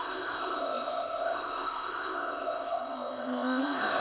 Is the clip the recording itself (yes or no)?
no